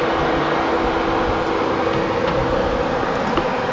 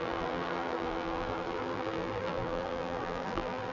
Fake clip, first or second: second